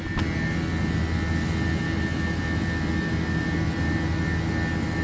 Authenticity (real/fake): real